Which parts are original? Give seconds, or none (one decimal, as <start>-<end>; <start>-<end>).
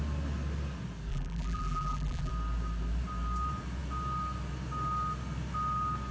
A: 0.0-1.1; 2.3-6.1